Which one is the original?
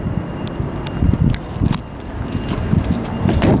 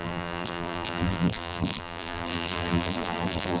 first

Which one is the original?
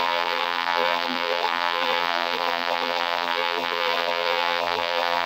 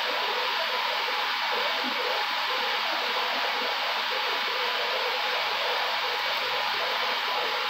second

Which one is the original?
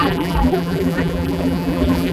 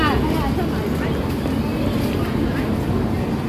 second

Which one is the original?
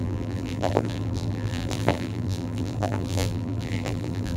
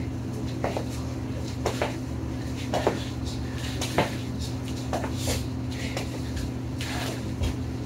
second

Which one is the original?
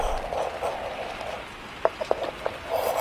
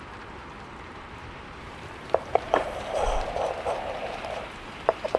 first